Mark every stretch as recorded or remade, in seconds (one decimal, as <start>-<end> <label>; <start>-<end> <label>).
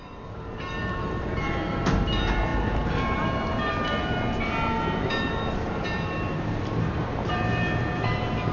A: 0.0-8.5 remade